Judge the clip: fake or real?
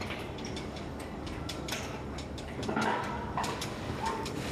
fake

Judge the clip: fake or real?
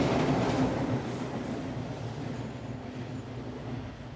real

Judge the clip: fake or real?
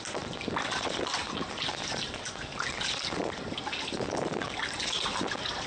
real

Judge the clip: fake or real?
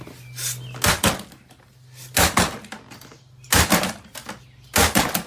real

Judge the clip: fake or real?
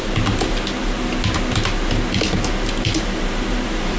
real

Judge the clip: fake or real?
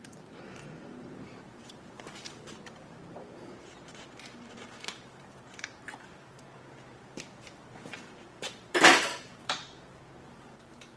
fake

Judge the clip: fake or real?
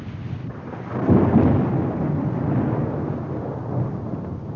real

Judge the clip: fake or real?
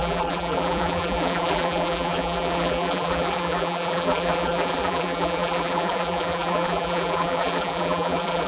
fake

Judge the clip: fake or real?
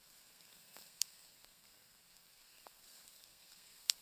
fake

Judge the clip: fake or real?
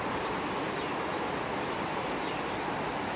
real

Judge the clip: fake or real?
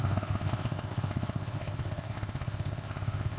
fake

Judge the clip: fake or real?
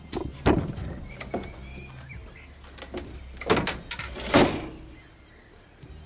real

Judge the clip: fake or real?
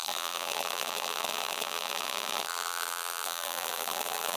fake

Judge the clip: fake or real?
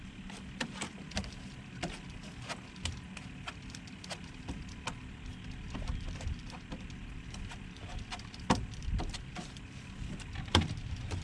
real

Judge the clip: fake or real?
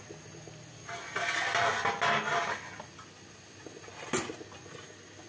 real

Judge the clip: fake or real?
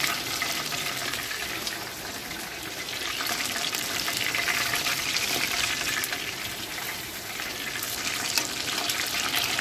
fake